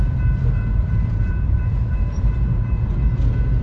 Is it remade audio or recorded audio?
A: remade